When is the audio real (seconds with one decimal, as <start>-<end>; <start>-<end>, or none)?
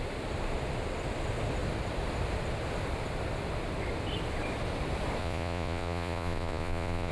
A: 0.0-5.2